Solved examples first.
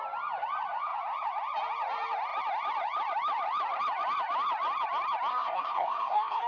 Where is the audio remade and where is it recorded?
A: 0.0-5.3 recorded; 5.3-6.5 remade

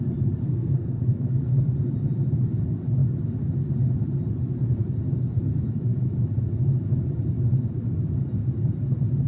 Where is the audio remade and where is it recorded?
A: 0.0-0.5 recorded; 0.5-1.5 remade; 1.5-9.3 recorded

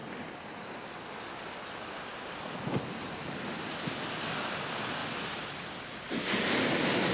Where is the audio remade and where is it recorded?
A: 0.0-7.1 recorded

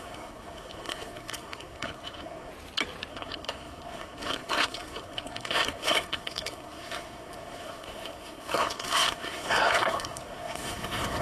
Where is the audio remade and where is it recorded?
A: 0.0-2.5 remade; 2.5-3.1 recorded; 3.1-11.2 remade